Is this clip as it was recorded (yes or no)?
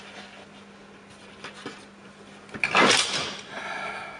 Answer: yes